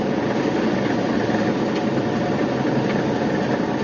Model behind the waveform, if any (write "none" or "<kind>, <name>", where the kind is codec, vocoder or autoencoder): none